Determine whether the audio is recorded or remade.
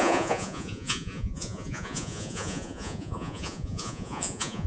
remade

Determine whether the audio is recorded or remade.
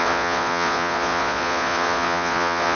remade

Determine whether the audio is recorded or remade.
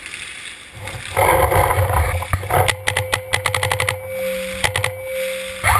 recorded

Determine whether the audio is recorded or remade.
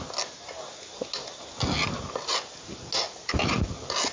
recorded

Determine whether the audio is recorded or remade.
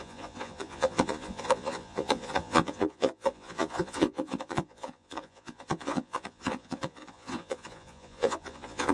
remade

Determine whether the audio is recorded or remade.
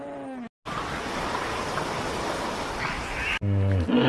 recorded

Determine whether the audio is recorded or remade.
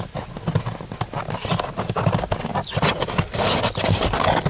recorded